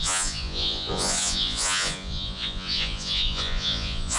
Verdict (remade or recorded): remade